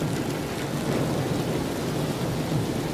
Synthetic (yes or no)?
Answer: no